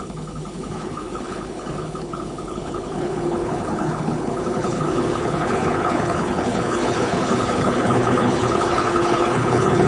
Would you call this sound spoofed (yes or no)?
yes